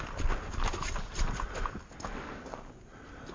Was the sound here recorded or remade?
recorded